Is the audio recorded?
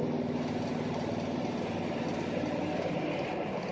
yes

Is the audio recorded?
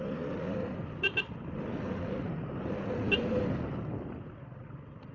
yes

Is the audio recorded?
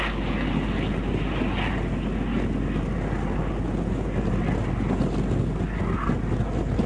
yes